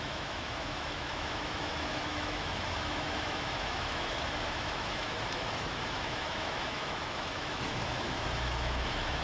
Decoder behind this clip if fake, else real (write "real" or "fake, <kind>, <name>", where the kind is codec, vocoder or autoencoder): fake, autoencoder, DAC-VAE